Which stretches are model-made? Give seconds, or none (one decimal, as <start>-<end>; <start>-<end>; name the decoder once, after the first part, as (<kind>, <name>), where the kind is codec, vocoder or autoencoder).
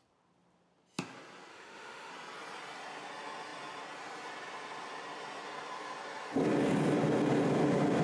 1.5-2.1 (autoencoder, DAC-VAE)